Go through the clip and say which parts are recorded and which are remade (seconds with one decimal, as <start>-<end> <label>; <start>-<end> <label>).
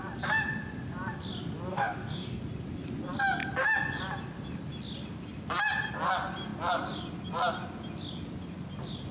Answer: 0.0-1.7 recorded; 1.7-2.4 remade; 2.4-9.1 recorded